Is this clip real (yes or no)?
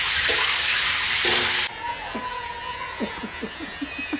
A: yes